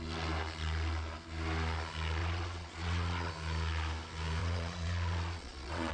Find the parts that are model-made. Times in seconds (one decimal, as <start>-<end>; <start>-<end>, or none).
2.2-3.3; 4.4-5.9